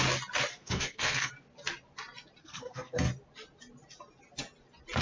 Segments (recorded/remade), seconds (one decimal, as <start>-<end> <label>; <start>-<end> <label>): 0.0-0.5 recorded; 0.5-1.3 remade; 1.3-2.4 recorded; 2.4-3.1 remade; 3.1-5.0 recorded